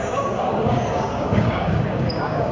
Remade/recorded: remade